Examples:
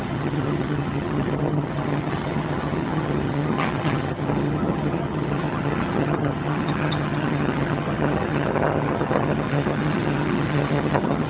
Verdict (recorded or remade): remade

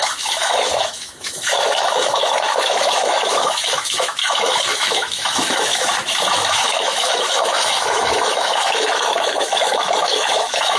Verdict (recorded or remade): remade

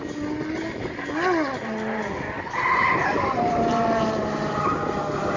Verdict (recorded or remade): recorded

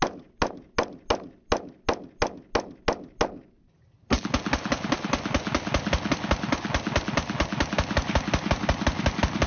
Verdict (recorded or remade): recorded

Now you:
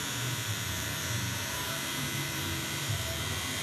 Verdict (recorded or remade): remade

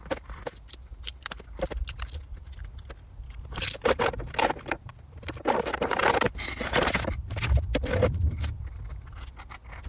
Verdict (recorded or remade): recorded